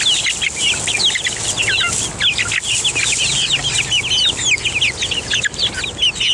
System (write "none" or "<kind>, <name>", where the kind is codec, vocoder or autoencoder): none